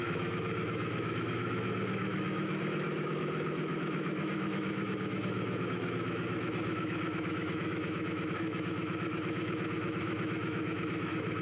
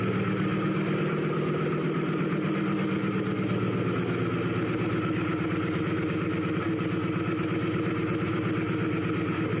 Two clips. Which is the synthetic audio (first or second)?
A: first